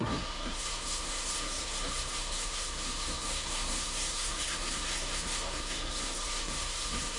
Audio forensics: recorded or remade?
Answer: remade